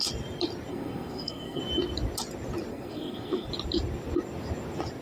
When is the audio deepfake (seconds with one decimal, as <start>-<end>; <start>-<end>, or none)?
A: 0.7-1.6; 2.7-3.5